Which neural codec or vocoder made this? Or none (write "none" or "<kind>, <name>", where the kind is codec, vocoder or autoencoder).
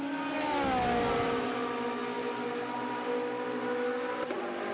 none